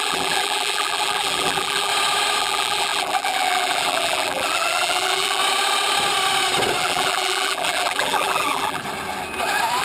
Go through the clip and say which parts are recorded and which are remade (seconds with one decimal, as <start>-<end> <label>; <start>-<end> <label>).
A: 0.0-1.9 remade; 1.9-2.4 recorded; 2.4-5.4 remade; 5.4-6.8 recorded; 6.8-8.8 remade; 8.8-9.8 recorded